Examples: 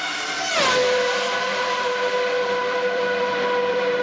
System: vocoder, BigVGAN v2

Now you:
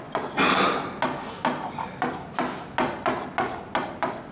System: none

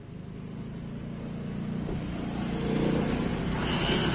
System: none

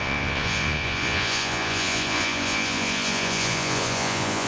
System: vocoder, Vocos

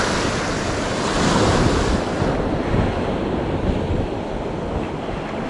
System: none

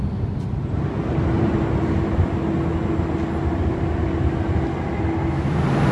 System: none